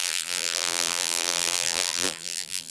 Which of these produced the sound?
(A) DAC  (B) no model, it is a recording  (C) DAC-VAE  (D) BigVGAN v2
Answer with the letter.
D